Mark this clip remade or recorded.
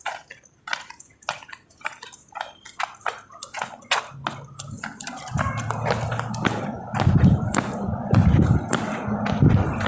recorded